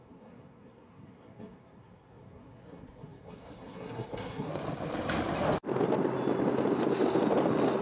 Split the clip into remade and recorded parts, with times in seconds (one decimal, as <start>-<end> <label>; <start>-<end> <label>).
0.0-4.5 remade; 4.5-7.8 recorded